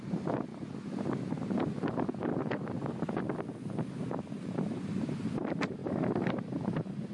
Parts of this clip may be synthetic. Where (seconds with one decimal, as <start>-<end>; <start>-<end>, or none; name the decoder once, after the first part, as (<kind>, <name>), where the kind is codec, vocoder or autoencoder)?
0.0-0.5 (vocoder, BigVGAN v2); 1.2-2.3; 4.4-5.8; 6.3-7.1